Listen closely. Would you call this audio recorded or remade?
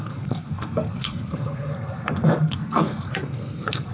remade